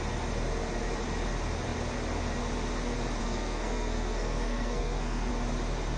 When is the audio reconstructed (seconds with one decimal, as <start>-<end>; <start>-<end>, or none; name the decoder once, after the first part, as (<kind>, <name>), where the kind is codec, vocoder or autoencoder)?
3.2-5.3 (codec, SNAC)